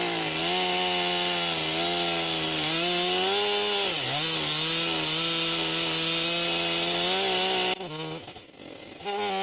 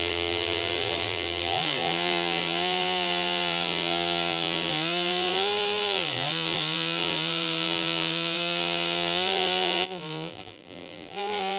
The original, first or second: first